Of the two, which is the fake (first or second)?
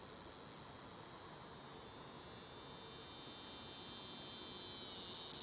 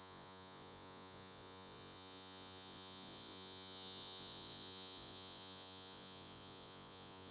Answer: second